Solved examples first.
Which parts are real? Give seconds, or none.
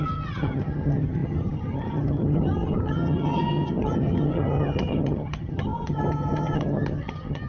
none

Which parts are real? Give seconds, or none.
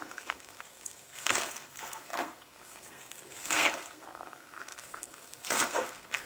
none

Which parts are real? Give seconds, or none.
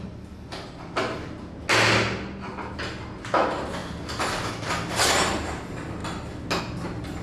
0.0-7.2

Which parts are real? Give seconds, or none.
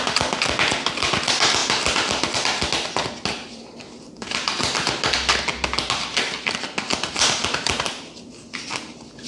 0.0-9.3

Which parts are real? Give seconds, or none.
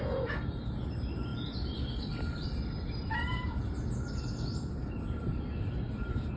0.0-6.4